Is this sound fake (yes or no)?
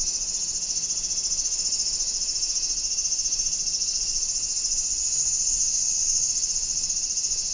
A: no